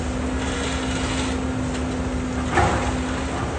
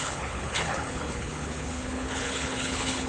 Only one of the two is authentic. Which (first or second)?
first